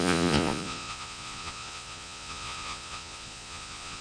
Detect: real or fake fake